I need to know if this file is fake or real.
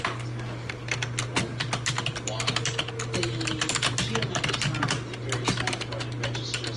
real